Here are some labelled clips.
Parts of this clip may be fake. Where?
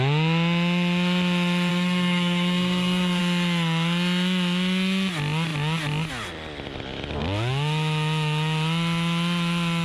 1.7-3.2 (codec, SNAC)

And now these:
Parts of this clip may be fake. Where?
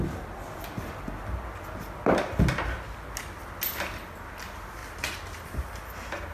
none